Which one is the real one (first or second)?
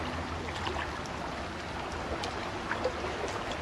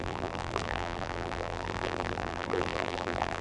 first